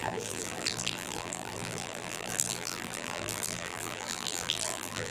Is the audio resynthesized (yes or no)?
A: yes